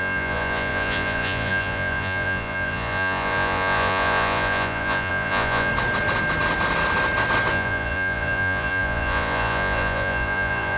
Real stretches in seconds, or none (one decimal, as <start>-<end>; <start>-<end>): 5.7-7.5